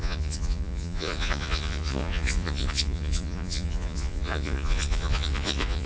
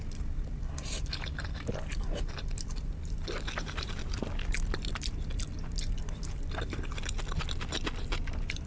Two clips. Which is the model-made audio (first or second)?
first